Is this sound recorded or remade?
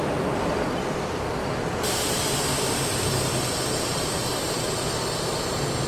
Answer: recorded